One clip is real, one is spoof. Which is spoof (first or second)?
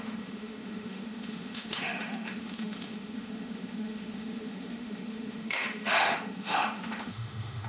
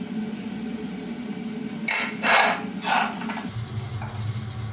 first